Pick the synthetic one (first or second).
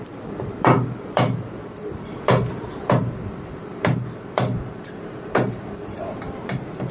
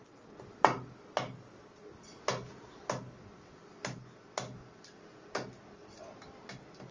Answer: first